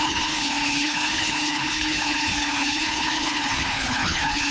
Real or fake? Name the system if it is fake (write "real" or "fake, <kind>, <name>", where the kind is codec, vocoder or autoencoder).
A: fake, codec, HILCodec